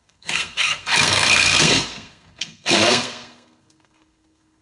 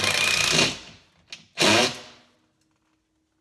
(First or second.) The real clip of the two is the second